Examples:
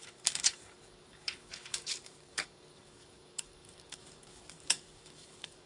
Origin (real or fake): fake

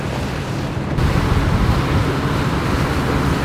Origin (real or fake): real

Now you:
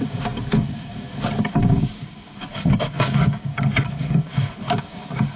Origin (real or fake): fake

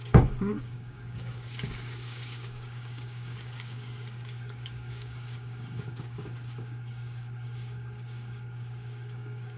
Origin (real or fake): fake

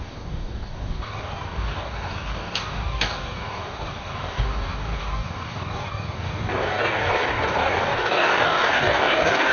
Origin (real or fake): fake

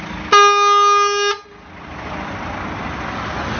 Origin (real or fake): real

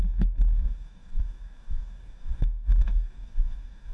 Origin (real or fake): fake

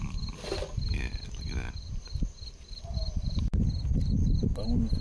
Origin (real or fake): real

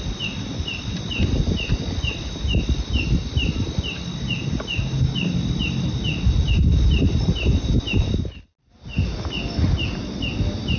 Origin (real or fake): real